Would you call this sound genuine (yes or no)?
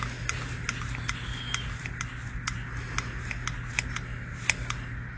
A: yes